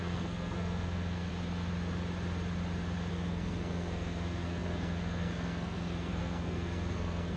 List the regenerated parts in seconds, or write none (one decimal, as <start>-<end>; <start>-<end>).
0.0-1.3; 3.1-7.4